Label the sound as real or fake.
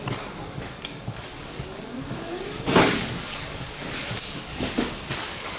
fake